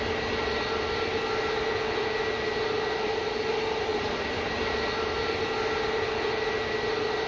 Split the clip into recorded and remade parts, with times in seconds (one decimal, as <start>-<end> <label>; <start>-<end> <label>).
0.0-3.9 recorded; 3.9-4.7 remade; 4.7-7.3 recorded

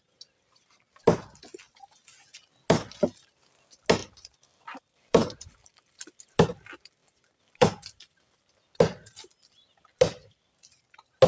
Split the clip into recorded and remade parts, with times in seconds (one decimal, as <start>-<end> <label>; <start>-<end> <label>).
0.0-4.0 recorded; 4.0-6.0 remade; 6.0-7.0 recorded; 7.0-8.5 remade; 8.5-11.3 recorded

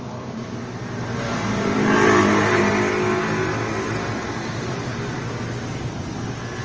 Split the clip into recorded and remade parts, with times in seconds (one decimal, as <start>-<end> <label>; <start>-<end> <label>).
0.0-1.3 recorded; 1.3-2.7 remade; 2.7-6.6 recorded

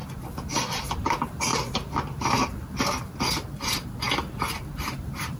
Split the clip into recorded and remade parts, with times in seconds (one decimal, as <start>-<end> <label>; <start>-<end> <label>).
0.0-0.8 recorded; 0.8-5.4 remade

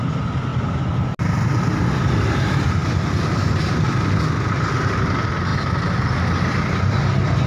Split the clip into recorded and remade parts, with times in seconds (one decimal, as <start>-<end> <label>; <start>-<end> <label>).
0.0-7.5 recorded

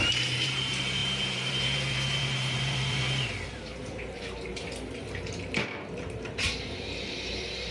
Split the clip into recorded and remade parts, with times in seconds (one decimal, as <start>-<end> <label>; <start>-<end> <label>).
0.0-4.5 remade; 4.5-6.0 recorded; 6.0-7.7 remade

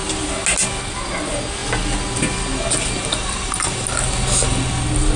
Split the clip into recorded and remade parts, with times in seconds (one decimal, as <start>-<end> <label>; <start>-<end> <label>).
0.0-0.7 recorded; 0.7-1.6 remade; 1.6-4.7 recorded; 4.7-5.2 remade